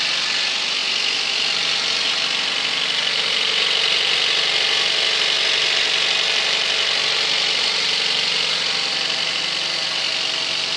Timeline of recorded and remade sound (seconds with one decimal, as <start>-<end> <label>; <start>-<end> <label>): 0.0-10.8 recorded